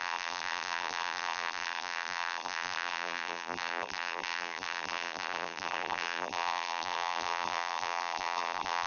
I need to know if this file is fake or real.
fake